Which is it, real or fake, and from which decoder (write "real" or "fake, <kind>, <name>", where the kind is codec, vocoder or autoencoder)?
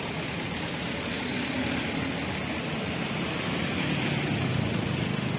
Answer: real